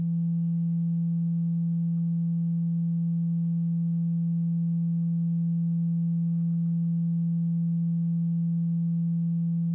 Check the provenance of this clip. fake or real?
real